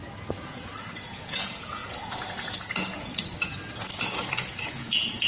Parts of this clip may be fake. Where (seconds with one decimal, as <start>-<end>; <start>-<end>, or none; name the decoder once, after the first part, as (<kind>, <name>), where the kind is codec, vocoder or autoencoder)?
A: 0.0-5.3 (vocoder, Vocos)